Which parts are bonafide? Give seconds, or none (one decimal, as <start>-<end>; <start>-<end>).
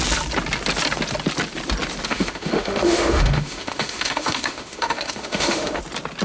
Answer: 0.0-2.1; 5.8-6.2